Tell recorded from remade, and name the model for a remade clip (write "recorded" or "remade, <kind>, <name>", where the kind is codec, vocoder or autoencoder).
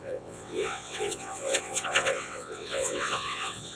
remade, vocoder, WaveNeXt